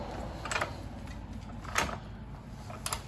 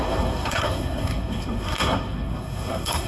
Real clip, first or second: first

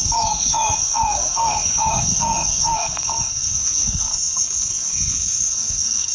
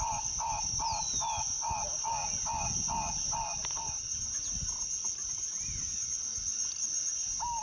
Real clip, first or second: second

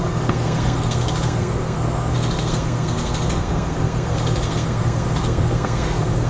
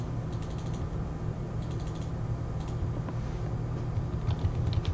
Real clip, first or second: second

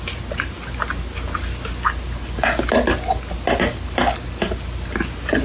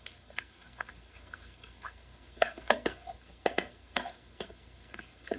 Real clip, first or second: first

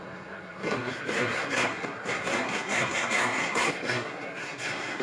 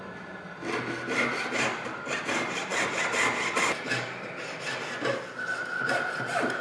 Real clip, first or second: second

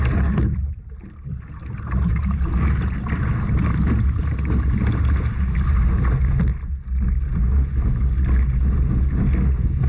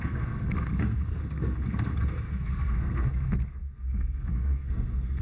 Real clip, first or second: first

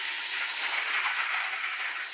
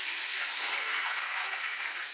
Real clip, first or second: first